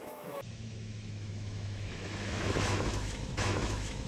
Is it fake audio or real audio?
fake